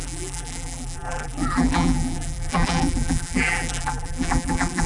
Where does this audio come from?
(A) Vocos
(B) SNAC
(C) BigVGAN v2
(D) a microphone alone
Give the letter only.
C